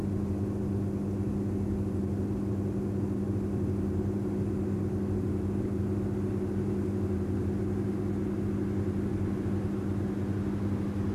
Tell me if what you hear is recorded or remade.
recorded